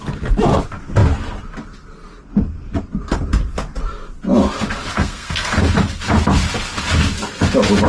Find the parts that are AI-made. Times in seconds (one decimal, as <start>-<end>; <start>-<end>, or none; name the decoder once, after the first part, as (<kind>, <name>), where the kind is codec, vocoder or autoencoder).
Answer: 4.9-5.6 (codec, SNAC)